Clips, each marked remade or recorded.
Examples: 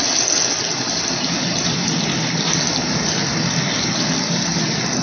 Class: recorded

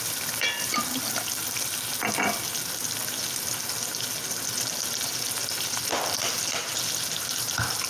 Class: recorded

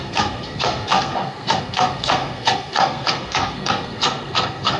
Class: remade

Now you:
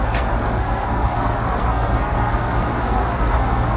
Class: remade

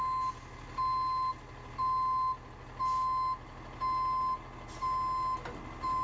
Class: recorded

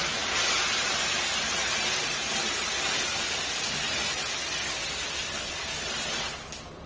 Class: recorded